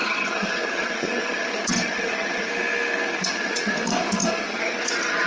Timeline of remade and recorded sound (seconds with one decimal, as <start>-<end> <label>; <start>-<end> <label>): 0.0-2.5 remade; 2.5-3.2 recorded; 3.2-3.7 remade; 3.7-4.2 recorded; 4.2-5.3 remade

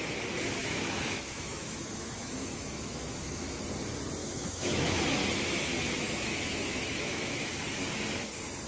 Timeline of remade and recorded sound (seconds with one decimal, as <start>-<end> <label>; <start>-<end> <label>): 0.0-0.6 recorded; 0.6-3.6 remade; 3.6-4.2 recorded; 4.2-5.0 remade; 5.0-5.7 recorded; 5.7-7.5 remade; 7.5-8.7 recorded

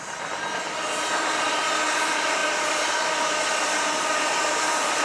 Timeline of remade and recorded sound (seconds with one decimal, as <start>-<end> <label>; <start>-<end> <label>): 0.0-5.0 recorded

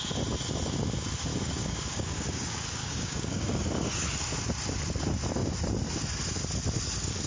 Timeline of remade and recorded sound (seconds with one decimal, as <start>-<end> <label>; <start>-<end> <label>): 0.0-1.3 recorded; 1.3-3.6 remade; 3.6-7.3 recorded

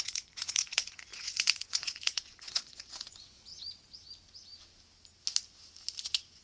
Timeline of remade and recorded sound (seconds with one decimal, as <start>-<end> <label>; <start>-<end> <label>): 0.0-3.5 remade; 3.5-6.0 recorded; 6.0-6.4 remade

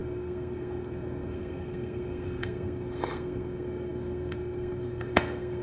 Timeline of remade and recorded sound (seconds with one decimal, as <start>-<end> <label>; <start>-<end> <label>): 0.0-5.6 remade

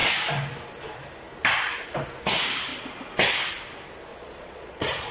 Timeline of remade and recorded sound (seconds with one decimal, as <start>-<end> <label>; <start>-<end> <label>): 0.0-4.1 recorded; 4.1-5.1 remade

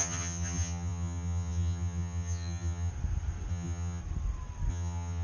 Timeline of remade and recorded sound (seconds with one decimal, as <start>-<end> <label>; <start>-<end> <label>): 0.0-2.9 remade; 2.9-3.5 recorded; 3.5-4.0 remade; 4.0-4.7 recorded; 4.7-5.2 remade